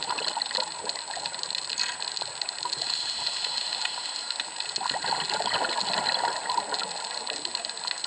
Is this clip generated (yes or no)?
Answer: no